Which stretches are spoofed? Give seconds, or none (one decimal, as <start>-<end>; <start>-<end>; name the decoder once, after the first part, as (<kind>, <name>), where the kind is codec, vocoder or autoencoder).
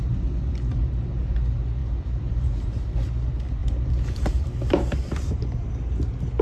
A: 1.8-3.1 (vocoder, BigVGAN v2); 3.6-5.7